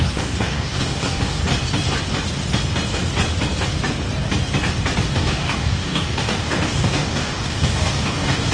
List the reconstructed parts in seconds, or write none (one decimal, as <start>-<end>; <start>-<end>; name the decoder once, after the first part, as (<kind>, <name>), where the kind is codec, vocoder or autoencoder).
0.0-1.4 (codec, DAC); 5.1-8.5

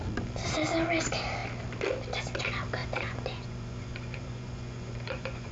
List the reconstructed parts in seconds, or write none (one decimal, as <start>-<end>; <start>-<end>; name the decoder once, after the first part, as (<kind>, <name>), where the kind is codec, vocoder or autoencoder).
2.8-5.5 (vocoder, Vocos)

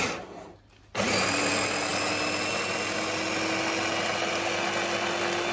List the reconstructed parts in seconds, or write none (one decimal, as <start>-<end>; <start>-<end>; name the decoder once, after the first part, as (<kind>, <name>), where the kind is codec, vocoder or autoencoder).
none

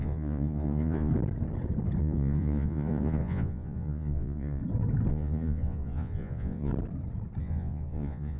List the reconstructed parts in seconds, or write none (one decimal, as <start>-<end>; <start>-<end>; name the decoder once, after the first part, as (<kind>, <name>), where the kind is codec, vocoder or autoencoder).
0.0-1.1 (vocoder, Vocos); 2.0-4.6; 5.1-6.7; 7.4-8.4

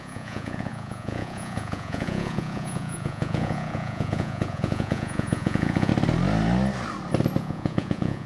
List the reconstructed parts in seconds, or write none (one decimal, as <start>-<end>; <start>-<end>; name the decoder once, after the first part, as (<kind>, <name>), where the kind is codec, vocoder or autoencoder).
0.0-5.9 (vocoder, Vocos); 7.4-8.3

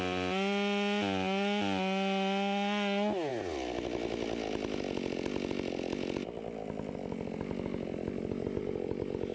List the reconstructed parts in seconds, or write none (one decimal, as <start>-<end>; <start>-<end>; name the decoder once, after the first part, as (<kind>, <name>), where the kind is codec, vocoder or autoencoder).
none

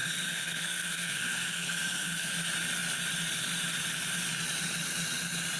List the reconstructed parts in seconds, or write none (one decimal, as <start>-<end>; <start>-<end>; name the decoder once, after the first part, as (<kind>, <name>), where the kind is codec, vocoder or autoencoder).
0.0-2.3 (codec, SNAC)

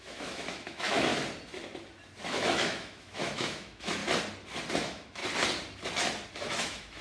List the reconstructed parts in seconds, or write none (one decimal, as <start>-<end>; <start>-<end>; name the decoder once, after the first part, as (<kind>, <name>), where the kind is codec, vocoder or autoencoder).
0.0-1.1 (autoencoder, DAC-VAE); 2.3-4.0; 4.7-5.2; 6.3-7.0